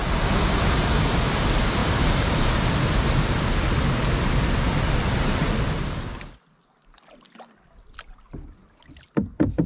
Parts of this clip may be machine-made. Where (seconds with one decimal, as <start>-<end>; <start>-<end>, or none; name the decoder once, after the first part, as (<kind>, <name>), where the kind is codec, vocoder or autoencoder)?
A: 1.8-4.3 (vocoder, BigVGAN v2); 4.7-5.5